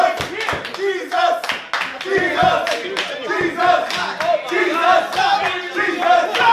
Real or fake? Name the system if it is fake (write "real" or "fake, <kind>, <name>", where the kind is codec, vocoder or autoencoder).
real